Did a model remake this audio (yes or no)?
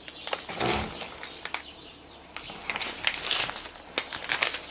no